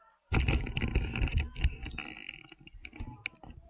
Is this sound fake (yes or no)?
no